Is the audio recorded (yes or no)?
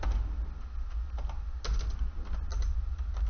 yes